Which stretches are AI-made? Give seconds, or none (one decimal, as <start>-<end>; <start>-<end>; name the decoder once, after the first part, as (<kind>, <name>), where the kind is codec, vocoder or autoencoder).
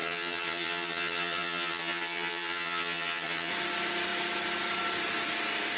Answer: 0.0-3.5 (vocoder, HiFi-GAN)